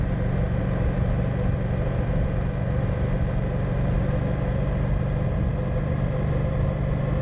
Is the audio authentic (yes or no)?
yes